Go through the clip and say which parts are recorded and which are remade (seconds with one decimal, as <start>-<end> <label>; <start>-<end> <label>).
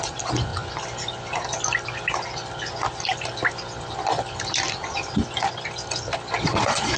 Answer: 0.0-0.5 remade; 0.5-4.7 recorded; 4.7-5.2 remade; 5.2-6.4 recorded; 6.4-7.0 remade